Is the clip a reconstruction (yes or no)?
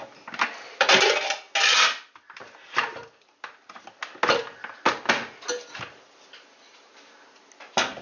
no